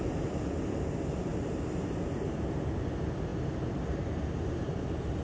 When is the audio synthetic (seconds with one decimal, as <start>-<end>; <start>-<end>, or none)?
1.3-2.8